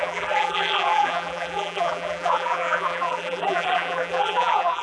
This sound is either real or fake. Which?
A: fake